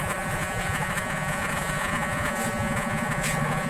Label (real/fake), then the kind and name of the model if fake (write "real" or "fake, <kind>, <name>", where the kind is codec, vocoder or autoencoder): fake, vocoder, Vocos